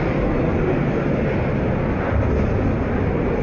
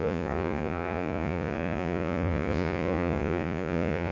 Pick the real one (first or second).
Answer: first